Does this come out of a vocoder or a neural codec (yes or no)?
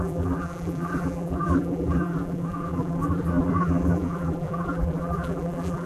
yes